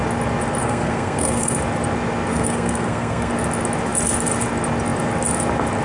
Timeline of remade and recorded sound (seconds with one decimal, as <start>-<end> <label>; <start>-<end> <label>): 0.0-0.6 recorded; 0.6-1.6 remade; 1.6-2.3 recorded; 2.3-3.3 remade; 3.3-5.8 recorded